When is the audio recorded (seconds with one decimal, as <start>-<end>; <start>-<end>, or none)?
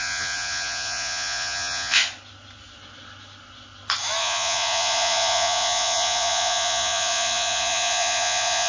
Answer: 2.0-4.2